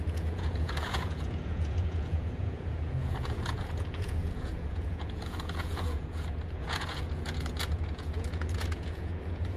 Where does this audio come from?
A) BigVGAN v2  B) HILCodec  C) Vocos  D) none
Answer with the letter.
C